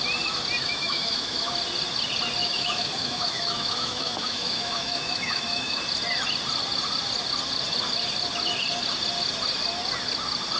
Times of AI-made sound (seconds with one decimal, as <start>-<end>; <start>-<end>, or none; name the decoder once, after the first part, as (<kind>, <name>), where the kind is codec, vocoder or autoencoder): 0.6-1.5 (autoencoder, DAC-VAE); 2.4-5.8